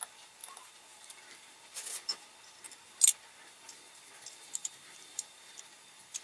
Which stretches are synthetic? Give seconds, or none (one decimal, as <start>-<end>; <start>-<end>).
0.4-1.2; 4.6-5.6